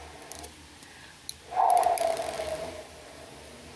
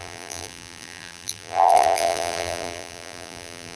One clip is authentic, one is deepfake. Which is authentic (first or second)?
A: first